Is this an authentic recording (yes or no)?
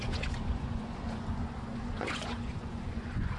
no